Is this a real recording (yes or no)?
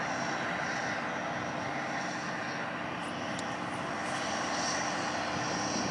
yes